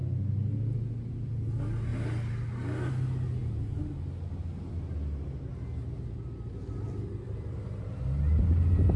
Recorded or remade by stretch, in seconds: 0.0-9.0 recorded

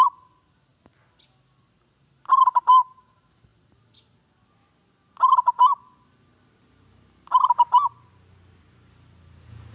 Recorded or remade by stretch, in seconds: 0.0-9.7 recorded

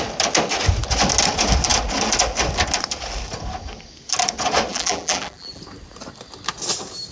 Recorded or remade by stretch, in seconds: 0.0-4.7 recorded; 4.7-5.6 remade; 5.6-7.1 recorded

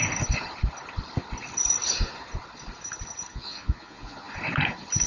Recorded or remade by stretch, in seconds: 0.0-3.3 recorded; 3.3-4.3 remade; 4.3-5.1 recorded

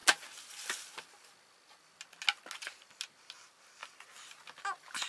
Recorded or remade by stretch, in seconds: 0.0-5.1 recorded

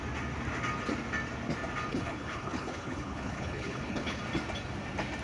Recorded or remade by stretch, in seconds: 0.0-1.9 recorded; 1.9-4.2 remade; 4.2-5.2 recorded

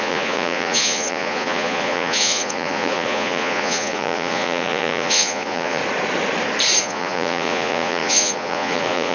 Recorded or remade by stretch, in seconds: 0.0-5.8 remade; 5.8-6.8 recorded; 6.8-9.1 remade

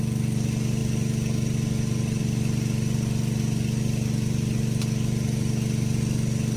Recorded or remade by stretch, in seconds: 0.0-6.6 recorded